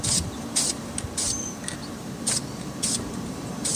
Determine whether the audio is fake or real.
fake